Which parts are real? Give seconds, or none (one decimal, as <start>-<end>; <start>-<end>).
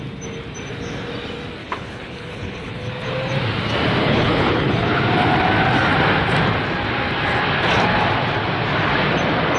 0.0-1.6; 2.9-4.0; 5.0-9.6